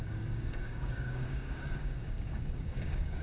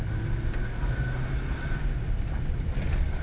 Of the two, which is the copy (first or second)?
first